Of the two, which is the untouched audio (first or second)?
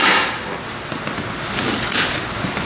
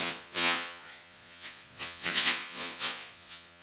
first